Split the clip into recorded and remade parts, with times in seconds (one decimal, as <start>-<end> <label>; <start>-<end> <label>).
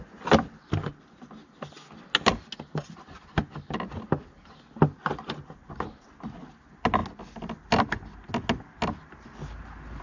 0.0-10.0 recorded